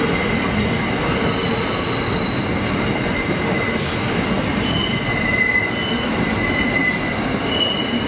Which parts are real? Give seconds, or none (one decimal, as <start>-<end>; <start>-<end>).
0.0-8.1